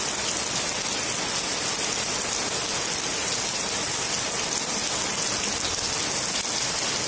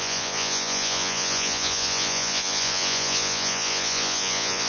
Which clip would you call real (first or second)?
first